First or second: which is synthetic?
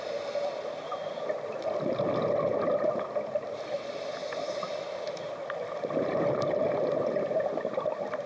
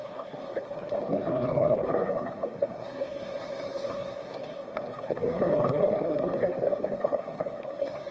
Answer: second